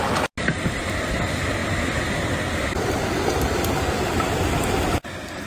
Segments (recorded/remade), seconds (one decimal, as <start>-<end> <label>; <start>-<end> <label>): 0.0-5.5 recorded